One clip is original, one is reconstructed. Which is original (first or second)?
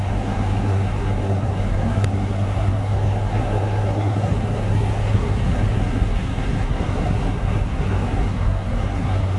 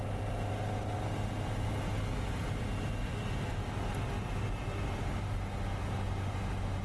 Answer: second